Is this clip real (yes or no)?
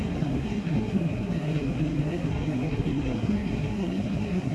no